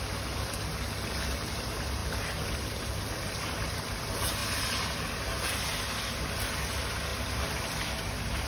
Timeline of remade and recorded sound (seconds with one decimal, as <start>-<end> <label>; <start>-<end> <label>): 0.0-2.0 recorded; 2.0-3.9 remade; 3.9-7.1 recorded; 7.1-7.9 remade; 7.9-8.5 recorded